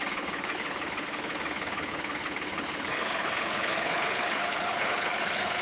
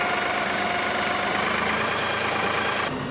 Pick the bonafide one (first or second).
second